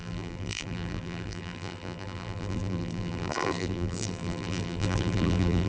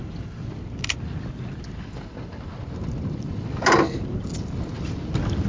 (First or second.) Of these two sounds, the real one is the second